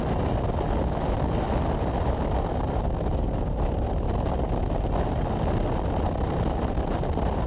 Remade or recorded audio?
recorded